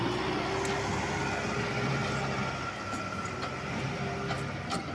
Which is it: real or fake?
real